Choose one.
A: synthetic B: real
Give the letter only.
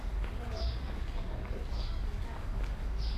A